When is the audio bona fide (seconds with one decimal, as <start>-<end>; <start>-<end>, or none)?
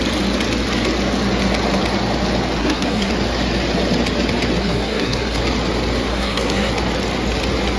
0.0-2.6; 3.1-4.6; 5.4-6.1; 6.7-7.8